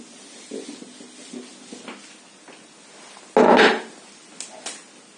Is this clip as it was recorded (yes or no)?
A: yes